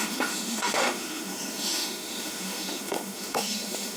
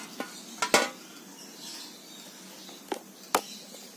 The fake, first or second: first